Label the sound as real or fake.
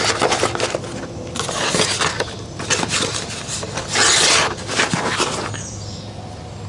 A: real